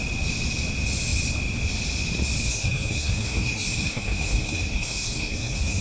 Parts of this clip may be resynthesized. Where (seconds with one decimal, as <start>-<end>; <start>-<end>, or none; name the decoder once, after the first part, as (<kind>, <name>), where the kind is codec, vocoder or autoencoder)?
2.5-5.8 (codec, SNAC)